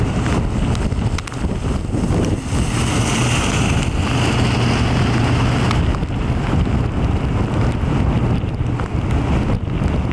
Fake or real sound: real